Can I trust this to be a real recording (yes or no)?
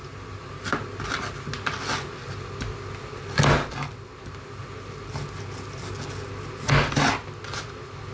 yes